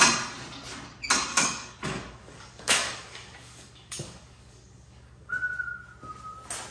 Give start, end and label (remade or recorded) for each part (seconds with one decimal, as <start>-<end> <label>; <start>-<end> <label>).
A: 0.0-1.3 recorded; 1.3-5.3 remade; 5.3-6.7 recorded